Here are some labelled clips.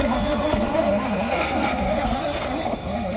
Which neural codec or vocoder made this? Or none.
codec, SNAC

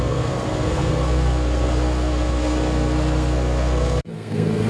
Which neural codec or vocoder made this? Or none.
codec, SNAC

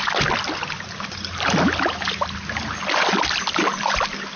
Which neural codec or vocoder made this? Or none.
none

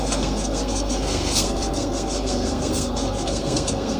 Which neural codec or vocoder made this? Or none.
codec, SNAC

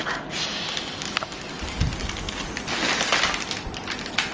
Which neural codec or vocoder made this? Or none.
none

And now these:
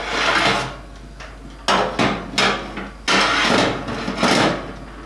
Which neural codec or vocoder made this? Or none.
none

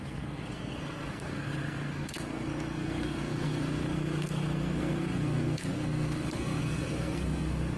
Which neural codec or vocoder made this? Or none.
codec, SNAC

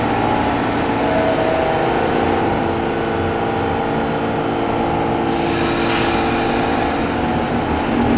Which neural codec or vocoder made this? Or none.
none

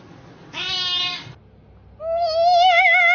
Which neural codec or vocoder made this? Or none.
none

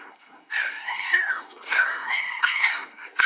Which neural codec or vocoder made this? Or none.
codec, SNAC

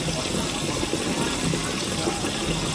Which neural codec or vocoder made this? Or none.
none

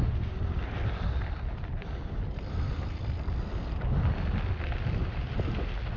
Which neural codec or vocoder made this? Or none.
none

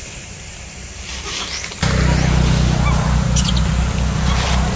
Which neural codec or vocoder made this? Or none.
none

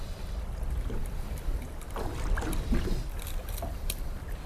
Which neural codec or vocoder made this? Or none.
none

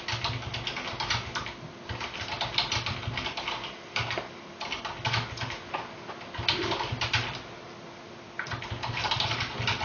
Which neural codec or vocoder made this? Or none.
none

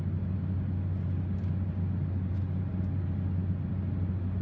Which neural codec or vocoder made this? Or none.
none